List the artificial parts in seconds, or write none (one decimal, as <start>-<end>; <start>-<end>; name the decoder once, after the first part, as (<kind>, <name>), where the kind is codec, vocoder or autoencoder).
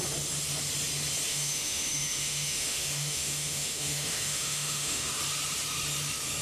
1.3-5.1 (autoencoder, DAC-VAE)